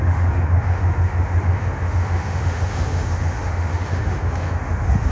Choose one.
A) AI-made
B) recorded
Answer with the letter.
A